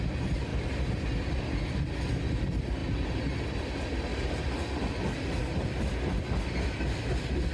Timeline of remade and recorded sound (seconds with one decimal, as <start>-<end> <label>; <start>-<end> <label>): 0.0-4.1 recorded; 4.1-5.0 remade; 5.0-7.5 recorded